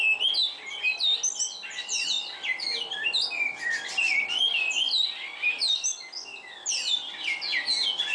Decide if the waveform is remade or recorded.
recorded